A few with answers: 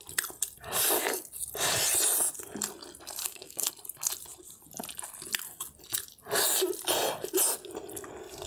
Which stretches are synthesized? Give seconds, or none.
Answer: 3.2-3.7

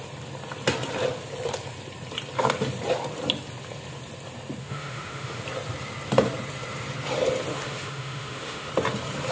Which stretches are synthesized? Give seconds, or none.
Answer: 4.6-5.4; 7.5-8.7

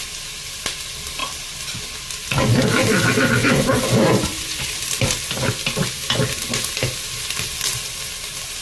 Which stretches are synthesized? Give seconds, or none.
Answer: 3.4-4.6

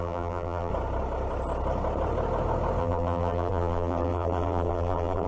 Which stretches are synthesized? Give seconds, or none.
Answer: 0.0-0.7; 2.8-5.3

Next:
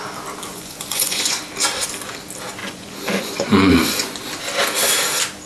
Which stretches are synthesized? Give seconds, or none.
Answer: 0.5-1.4; 2.6-4.2

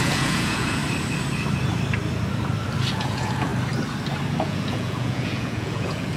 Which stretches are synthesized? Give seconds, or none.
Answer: 0.0-0.8; 2.9-3.5; 4.4-6.2